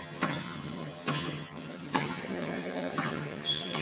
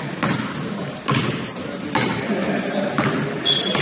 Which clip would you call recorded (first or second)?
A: second